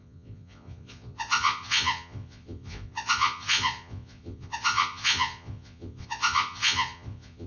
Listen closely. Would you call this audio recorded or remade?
remade